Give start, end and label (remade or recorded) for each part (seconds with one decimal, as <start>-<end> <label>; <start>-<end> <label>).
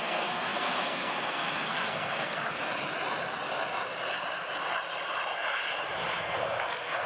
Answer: 0.0-2.6 remade; 2.6-6.2 recorded; 6.2-7.1 remade